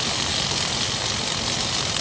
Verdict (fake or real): real